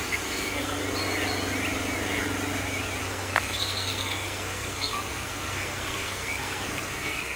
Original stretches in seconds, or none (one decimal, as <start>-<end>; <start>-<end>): 0.8-3.0